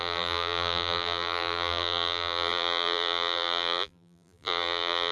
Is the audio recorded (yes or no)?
no